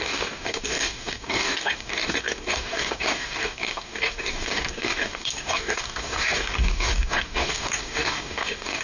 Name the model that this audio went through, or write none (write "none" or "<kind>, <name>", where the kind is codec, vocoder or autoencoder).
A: codec, DAC